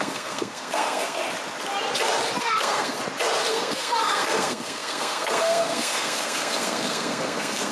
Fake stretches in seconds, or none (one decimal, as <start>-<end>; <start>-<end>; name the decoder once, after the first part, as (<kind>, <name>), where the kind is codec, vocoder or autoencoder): 0.0-1.2 (codec, SNAC); 2.4-3.0; 3.5-7.7